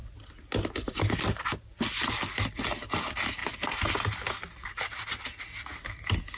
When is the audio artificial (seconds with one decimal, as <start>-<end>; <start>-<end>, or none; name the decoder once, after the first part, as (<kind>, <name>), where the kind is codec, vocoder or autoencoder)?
none